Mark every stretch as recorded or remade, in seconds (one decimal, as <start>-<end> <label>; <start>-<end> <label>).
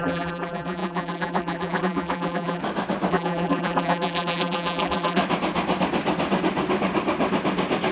0.0-2.6 remade; 2.6-3.1 recorded; 3.1-5.2 remade; 5.2-7.9 recorded